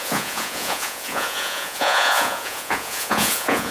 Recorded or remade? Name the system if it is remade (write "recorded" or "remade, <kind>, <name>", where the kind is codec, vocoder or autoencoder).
remade, vocoder, Vocos